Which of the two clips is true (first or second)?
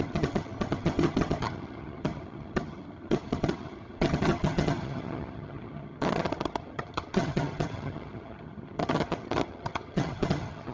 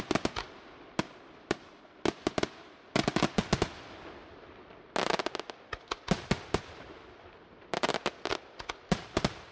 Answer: second